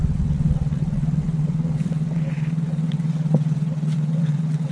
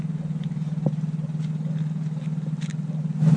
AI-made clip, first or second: first